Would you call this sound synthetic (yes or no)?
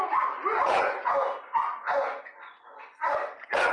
yes